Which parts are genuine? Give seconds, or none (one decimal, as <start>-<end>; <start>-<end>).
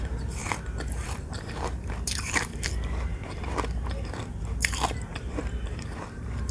none